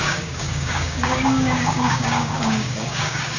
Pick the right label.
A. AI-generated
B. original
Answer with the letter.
A